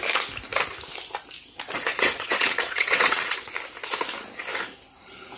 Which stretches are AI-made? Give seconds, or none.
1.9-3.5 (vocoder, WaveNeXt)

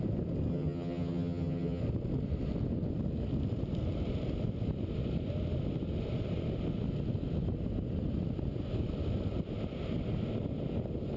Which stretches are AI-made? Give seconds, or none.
0.5-1.8 (vocoder, HiFi-GAN)

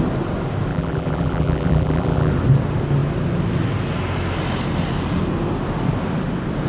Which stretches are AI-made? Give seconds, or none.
0.7-2.3 (vocoder, BigVGAN v2)

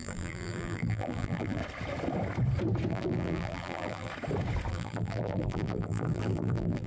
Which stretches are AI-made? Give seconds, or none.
0.0-1.6 (vocoder, BigVGAN v2); 2.9-4.1; 4.7-6.9

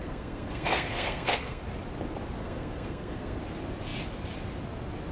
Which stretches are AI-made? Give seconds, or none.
0.0-1.6 (codec, SNAC); 2.4-3.4